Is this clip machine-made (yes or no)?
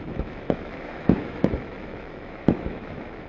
yes